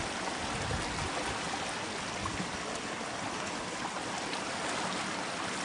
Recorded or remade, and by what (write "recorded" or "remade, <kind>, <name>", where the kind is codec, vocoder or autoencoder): recorded